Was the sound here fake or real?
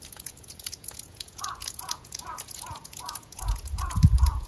fake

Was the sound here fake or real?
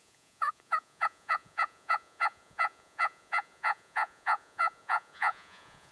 fake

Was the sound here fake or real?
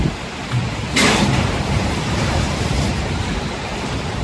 fake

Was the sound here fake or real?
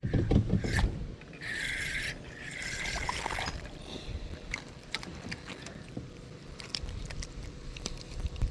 fake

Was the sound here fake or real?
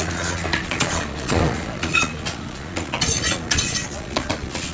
fake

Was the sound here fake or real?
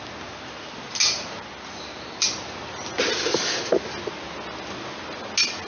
real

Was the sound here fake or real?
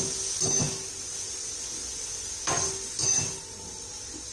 real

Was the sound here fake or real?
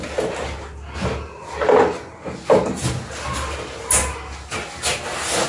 real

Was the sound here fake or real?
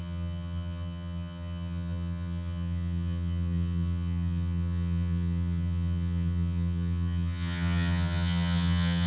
fake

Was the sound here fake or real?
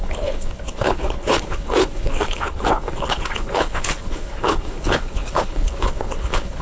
fake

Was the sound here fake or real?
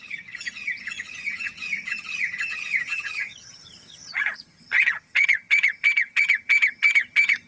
fake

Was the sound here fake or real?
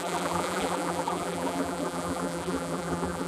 fake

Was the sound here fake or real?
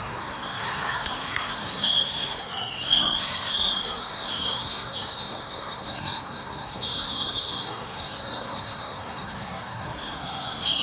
fake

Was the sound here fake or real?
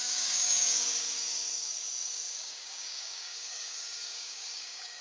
fake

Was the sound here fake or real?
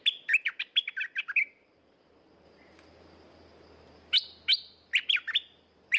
real